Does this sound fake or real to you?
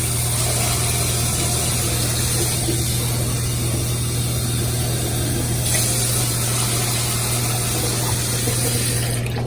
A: real